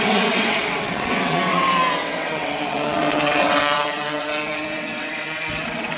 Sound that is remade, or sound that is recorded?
remade